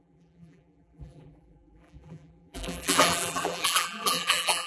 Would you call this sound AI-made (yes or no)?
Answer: yes